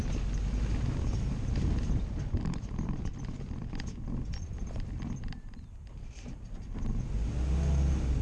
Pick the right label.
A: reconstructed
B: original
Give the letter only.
B